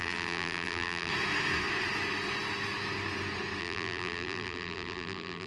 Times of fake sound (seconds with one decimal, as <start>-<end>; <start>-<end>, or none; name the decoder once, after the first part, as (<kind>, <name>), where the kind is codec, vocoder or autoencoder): 0.0-1.1 (vocoder, BigVGAN v2); 3.6-5.5